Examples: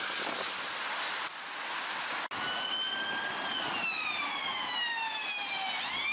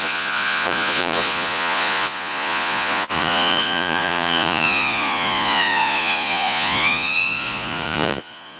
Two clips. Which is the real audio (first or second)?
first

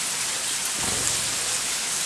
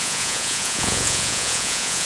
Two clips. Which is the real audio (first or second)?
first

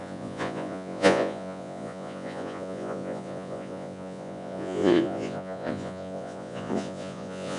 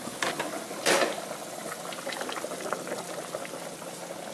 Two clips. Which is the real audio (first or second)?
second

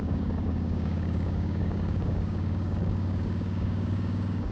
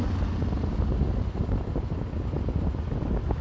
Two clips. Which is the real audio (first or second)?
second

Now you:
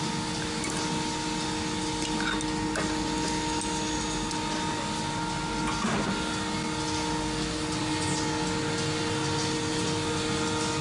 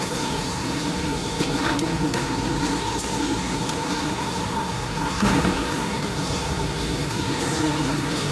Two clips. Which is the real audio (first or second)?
first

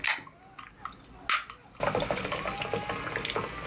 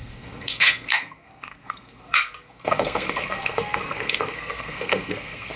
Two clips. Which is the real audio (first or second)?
first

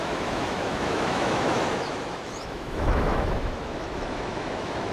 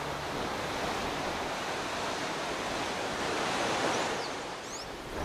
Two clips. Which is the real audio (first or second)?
second